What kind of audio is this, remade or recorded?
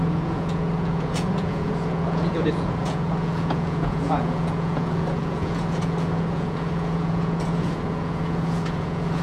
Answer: remade